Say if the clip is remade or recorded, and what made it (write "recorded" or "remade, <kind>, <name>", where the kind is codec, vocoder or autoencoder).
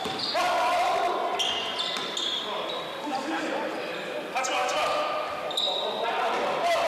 recorded